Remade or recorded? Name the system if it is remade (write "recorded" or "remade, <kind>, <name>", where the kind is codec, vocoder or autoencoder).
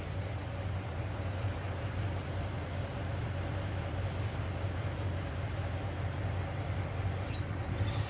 remade, vocoder, BigVGAN v2